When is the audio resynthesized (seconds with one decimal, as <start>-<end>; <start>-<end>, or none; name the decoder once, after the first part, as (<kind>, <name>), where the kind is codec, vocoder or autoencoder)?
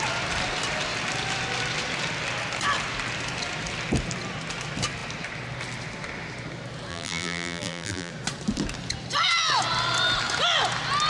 6.9-8.1 (vocoder, BigVGAN v2)